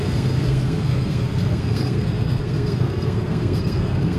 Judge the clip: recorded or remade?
remade